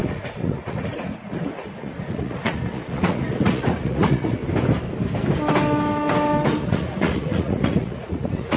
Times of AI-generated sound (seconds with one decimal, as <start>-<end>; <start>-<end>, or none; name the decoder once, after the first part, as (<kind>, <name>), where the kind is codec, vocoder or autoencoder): 0.0-4.4 (vocoder, Vocos); 6.6-8.6